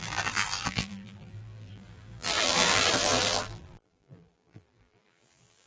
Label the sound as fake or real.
fake